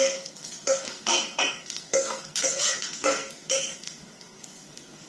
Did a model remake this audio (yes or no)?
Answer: yes